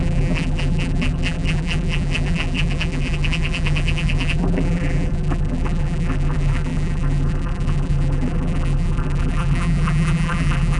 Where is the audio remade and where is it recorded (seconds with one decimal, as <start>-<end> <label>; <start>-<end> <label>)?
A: 0.0-10.8 remade